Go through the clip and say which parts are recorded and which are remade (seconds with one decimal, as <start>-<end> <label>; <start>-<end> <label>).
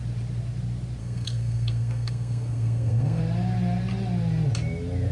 0.0-1.0 recorded; 1.0-3.2 remade; 3.2-5.1 recorded